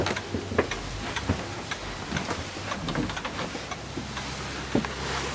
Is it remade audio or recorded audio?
recorded